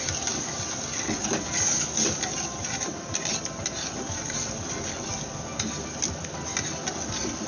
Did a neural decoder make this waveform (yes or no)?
no